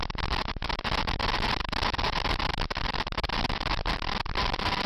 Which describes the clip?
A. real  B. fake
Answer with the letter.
A